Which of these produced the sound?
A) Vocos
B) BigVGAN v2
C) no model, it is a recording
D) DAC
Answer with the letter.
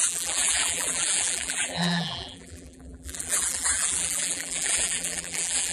B